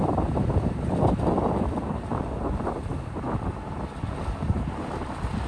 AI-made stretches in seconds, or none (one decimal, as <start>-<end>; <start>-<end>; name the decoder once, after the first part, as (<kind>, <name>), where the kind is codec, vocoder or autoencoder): none